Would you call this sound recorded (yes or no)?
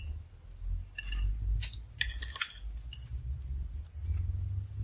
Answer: yes